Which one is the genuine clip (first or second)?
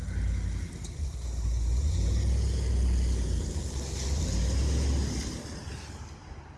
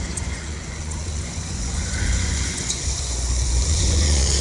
first